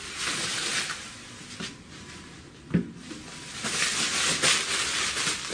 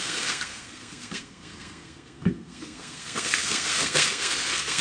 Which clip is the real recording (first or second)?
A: first